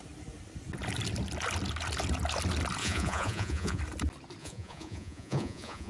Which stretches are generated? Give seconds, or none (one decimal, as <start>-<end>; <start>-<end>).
2.8-3.8; 4.4-5.9